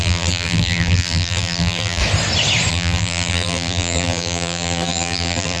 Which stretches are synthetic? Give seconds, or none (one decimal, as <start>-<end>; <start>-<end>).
0.0-2.0; 2.7-5.6